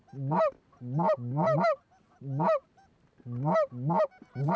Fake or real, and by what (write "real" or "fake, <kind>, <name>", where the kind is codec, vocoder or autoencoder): real